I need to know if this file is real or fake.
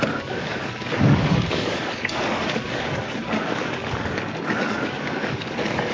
fake